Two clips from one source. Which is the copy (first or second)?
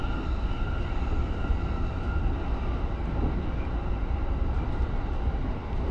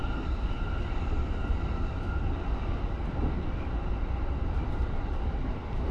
second